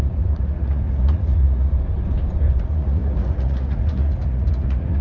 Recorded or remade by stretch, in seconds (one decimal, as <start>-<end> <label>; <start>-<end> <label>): 0.0-1.7 remade; 1.7-2.6 recorded; 2.6-5.0 remade